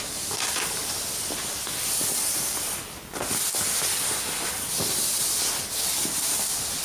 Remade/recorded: recorded